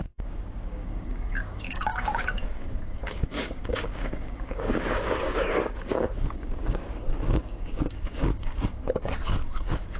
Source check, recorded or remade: remade